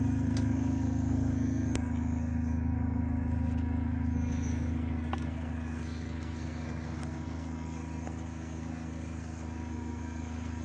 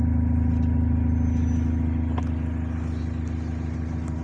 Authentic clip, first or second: second